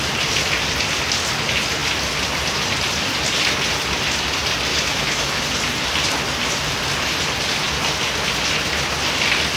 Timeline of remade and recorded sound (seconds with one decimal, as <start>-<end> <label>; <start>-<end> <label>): 0.0-4.7 recorded; 4.7-5.3 remade; 5.3-9.6 recorded